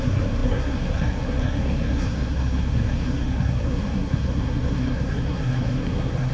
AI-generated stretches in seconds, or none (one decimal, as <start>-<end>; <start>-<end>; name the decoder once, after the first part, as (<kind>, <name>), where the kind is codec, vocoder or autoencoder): 0.0-6.3 (codec, SNAC)